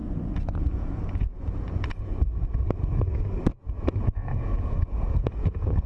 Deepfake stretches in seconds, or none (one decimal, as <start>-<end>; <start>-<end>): 0.6-2.1; 3.7-5.9